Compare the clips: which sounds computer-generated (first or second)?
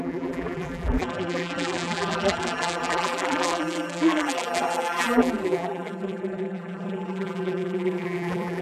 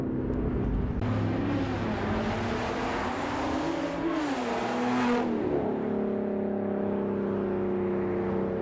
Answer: first